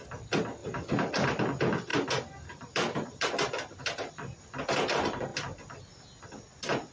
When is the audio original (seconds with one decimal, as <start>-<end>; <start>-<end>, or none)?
0.0-0.6; 1.4-1.9; 3.8-6.9